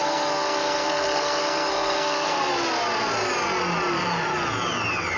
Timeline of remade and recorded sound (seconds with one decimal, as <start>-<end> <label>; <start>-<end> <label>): 0.0-2.5 remade; 2.5-5.2 recorded